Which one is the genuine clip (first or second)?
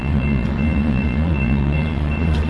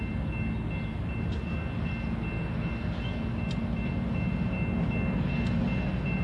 second